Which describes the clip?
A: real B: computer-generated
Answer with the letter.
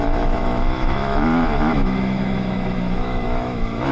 B